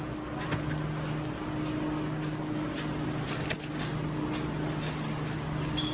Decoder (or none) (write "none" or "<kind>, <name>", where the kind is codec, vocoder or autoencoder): none